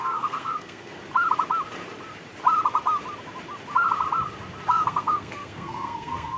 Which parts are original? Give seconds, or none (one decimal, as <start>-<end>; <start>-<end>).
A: 0.9-4.7